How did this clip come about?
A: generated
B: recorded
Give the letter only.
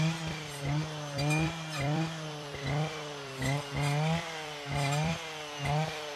A